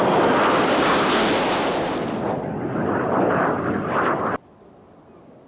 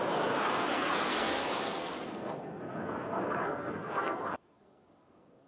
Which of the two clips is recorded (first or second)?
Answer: first